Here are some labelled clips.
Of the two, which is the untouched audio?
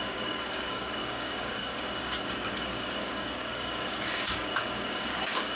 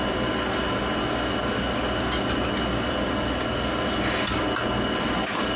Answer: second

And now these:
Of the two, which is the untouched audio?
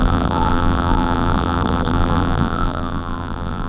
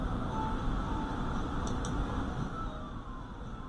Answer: second